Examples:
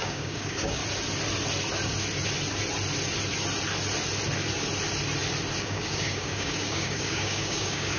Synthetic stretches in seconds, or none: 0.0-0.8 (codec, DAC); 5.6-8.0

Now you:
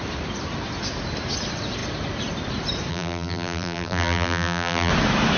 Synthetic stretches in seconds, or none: 2.9-4.9 (vocoder, BigVGAN v2)

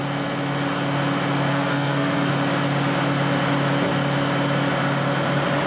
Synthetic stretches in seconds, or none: 1.5-2.3 (codec, SNAC)

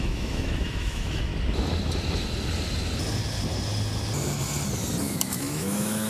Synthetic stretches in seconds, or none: 0.0-1.3 (autoencoder, DAC-VAE); 5.0-6.1